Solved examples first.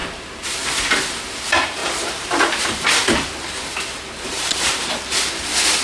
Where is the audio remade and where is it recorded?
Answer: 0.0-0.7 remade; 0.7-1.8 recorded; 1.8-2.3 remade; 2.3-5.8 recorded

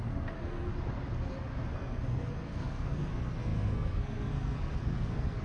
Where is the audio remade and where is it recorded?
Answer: 0.0-0.7 remade; 0.7-1.7 recorded; 1.7-5.4 remade

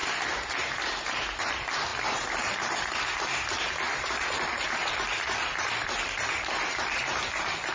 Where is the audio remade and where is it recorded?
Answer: 0.0-7.7 remade

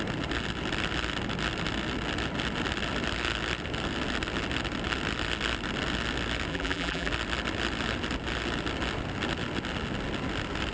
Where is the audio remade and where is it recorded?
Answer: 0.0-6.5 recorded; 6.5-7.1 remade; 7.1-10.7 recorded

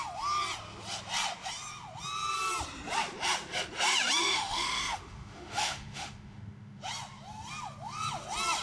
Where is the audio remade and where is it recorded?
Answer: 0.0-4.2 recorded; 4.2-6.8 remade; 6.8-8.6 recorded

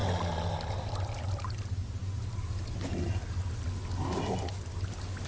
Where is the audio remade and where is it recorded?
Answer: 0.0-5.3 recorded

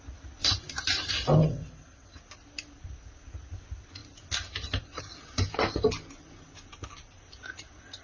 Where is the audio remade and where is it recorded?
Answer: 0.0-1.4 recorded; 1.4-2.2 remade; 2.2-8.0 recorded